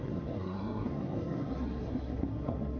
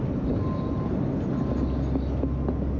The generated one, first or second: first